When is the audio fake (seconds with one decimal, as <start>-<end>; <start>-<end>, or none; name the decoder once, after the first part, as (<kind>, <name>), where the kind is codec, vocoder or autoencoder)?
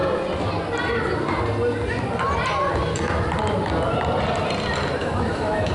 5.0-5.7 (autoencoder, DAC-VAE)